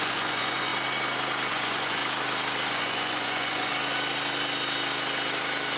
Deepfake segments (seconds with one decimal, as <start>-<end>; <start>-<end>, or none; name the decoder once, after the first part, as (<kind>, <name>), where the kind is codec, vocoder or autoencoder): 0.0-0.7 (vocoder, Vocos); 1.5-2.0; 2.7-3.7